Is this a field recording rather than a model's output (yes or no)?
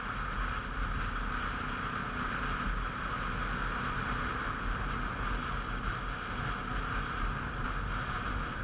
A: yes